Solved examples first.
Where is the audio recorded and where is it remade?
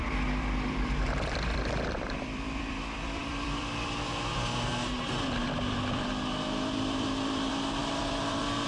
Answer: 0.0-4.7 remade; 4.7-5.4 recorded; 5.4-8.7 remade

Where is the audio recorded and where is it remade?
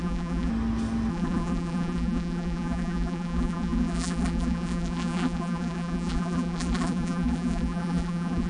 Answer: 0.0-0.5 remade; 0.5-1.1 recorded; 1.1-8.5 remade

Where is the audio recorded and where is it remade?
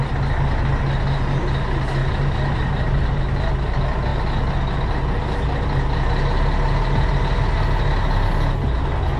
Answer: 0.0-2.0 recorded; 2.0-3.2 remade; 3.2-9.2 recorded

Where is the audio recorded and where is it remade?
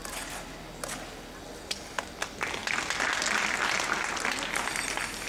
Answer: 0.0-5.3 recorded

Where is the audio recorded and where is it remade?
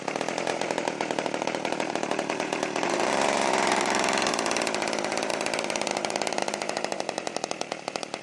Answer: 0.0-0.5 recorded; 0.5-4.3 remade; 4.3-5.3 recorded; 5.3-8.2 remade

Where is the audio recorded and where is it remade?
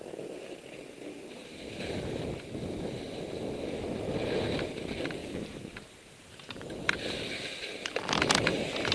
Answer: 0.0-1.4 recorded; 1.4-2.7 remade; 2.7-8.9 recorded